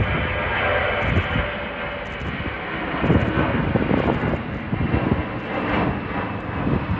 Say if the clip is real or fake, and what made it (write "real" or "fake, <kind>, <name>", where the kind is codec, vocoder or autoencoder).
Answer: real